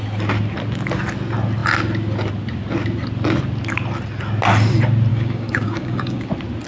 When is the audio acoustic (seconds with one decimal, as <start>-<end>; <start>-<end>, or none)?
0.0-5.1; 6.3-6.7